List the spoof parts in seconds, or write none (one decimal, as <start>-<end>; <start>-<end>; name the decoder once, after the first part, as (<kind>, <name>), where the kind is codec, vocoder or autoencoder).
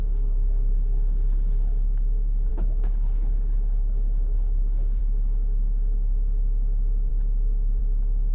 2.5-5.0 (codec, HILCodec)